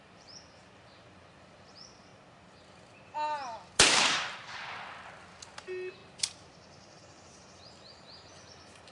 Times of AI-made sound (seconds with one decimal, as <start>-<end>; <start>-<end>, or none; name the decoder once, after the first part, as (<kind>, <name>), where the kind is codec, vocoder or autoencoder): 0.0-2.1 (vocoder, BigVGAN v2); 3.7-8.9